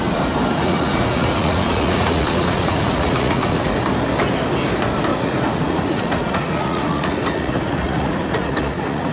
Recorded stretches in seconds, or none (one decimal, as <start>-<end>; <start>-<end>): 0.0-0.5; 3.7-5.1